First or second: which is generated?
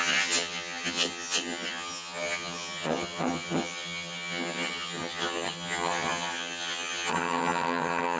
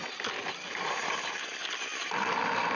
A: first